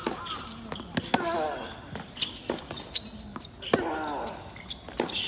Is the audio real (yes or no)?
yes